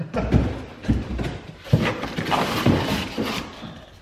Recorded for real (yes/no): yes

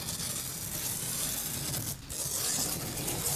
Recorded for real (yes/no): yes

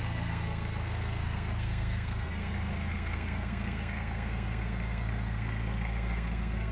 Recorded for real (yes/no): no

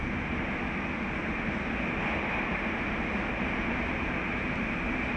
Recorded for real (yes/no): yes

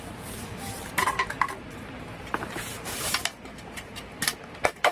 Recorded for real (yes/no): no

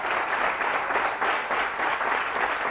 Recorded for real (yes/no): yes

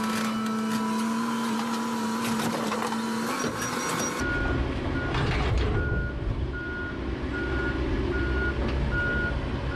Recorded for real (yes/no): yes